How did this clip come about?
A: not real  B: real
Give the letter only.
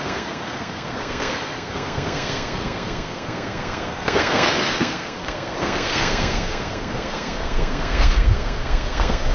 A